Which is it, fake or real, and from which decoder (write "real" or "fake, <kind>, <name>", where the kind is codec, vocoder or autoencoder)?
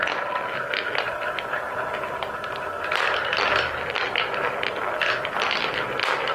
fake, vocoder, BigVGAN v2